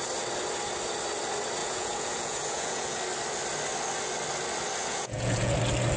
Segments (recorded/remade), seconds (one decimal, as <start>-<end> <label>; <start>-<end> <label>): 0.0-1.6 recorded; 1.6-3.0 remade; 3.0-4.8 recorded; 4.8-5.6 remade; 5.6-6.0 recorded